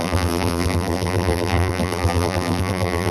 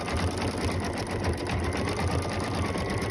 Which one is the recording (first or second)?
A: second